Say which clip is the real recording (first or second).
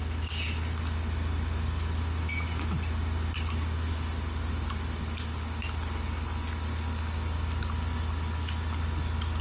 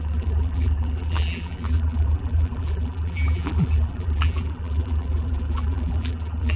first